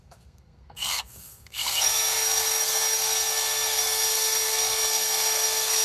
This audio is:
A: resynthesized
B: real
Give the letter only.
A